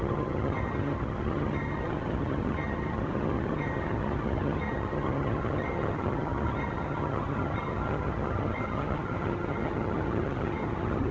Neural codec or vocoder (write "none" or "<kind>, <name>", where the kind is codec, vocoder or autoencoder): vocoder, HiFi-GAN